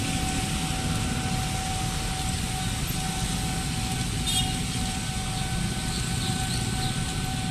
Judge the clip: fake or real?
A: real